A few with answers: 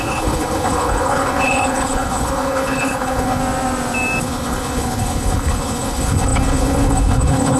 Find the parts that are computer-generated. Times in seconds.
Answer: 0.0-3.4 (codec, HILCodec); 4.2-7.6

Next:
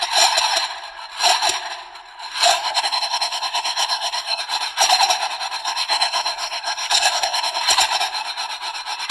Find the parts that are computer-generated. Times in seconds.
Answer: 2.5-4.4 (codec, SNAC); 5.6-7.6

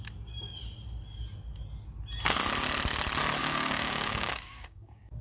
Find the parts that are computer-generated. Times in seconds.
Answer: 3.4-5.2 (codec, DAC)

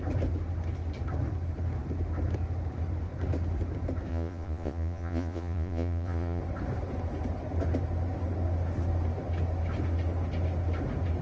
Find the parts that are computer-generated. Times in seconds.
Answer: 4.1-6.4 (vocoder, Vocos)

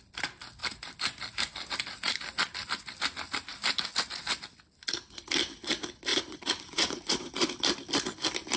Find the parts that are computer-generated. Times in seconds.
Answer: 6.1-7.5 (vocoder, Vocos)

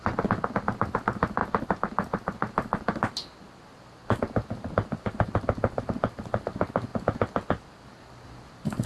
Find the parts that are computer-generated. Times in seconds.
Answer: none